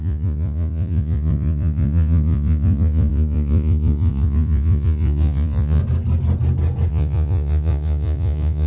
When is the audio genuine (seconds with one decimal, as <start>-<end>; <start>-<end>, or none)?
5.8-6.9